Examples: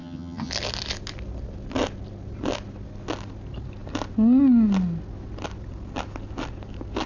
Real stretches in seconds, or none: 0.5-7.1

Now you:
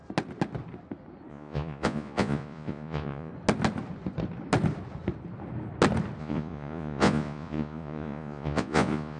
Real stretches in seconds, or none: 0.0-1.3; 3.3-6.2

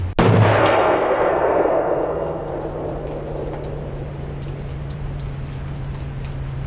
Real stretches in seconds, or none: 0.0-0.6; 2.5-6.7

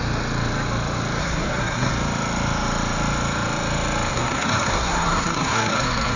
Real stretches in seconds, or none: 0.0-1.2; 1.9-4.1

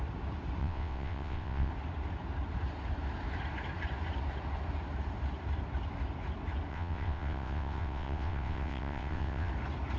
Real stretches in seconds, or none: 0.0-0.6; 1.7-6.7; 9.5-10.0

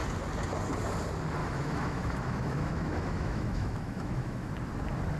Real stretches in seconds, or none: 0.0-1.4; 4.5-5.2

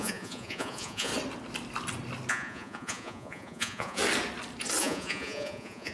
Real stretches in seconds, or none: 1.1-2.3; 4.0-4.8